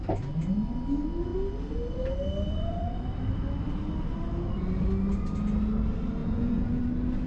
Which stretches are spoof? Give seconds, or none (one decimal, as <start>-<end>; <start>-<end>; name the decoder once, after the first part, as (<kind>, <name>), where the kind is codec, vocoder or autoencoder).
6.2-6.8 (vocoder, Vocos)